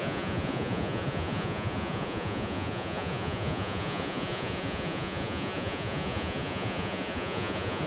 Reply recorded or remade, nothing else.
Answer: remade